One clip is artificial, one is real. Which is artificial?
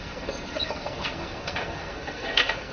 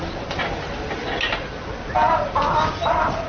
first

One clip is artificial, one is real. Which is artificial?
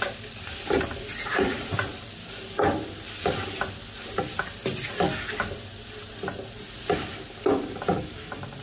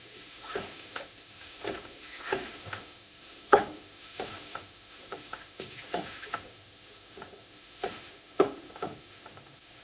second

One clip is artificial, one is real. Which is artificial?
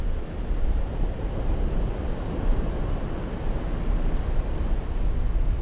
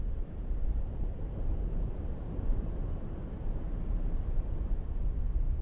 second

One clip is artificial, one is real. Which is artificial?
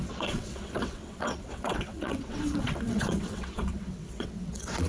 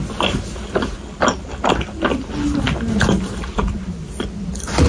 first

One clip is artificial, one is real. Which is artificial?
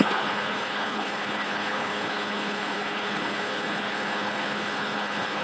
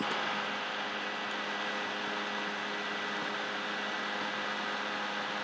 first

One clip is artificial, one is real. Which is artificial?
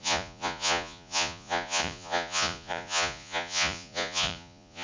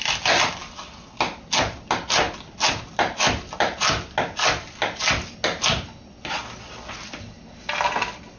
first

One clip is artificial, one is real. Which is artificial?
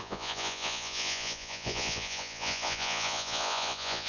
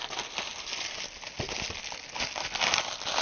first